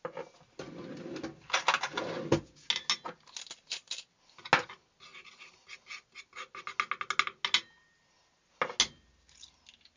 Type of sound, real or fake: real